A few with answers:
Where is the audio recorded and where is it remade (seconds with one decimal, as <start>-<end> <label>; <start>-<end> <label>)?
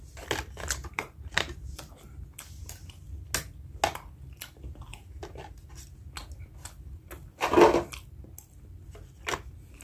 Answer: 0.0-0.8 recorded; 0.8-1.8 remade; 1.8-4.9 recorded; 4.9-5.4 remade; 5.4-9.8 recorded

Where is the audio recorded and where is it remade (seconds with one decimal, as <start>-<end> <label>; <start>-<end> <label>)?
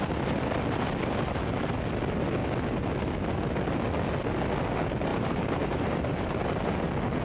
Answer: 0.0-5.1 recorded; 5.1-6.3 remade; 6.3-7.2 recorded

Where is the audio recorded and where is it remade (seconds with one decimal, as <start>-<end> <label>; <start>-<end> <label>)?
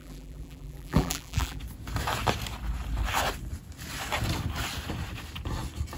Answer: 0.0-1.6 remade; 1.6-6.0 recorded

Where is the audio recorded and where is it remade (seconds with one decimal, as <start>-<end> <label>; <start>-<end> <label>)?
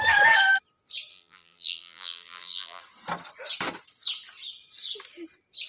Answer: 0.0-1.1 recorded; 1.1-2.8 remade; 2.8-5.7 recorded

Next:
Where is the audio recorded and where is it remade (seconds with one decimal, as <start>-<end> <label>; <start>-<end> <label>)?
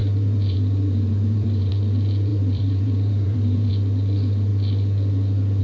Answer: 0.0-1.7 remade; 1.7-2.3 recorded; 2.3-3.7 remade; 3.7-5.6 recorded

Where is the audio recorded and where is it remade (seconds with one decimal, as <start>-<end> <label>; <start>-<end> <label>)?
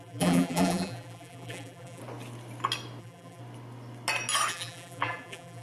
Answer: 0.0-2.0 remade; 2.0-3.0 recorded; 3.0-3.4 remade; 3.4-4.5 recorded; 4.5-5.6 remade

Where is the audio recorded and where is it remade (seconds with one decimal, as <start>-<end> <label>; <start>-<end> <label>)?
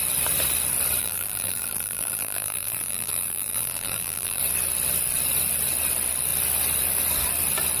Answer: 0.0-1.0 recorded; 1.0-4.4 remade; 4.4-7.8 recorded